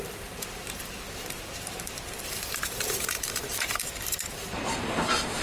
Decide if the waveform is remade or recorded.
remade